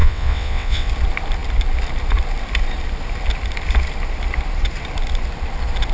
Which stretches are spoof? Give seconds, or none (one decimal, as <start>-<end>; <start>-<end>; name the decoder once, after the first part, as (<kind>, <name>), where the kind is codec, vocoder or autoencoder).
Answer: 0.0-0.9 (vocoder, WaveNeXt)